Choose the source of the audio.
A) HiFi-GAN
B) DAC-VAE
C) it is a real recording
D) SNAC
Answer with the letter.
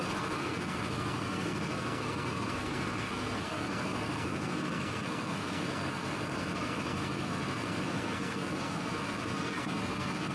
D